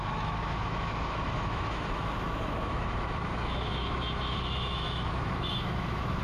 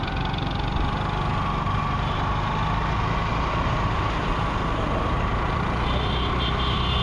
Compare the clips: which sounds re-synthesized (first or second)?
first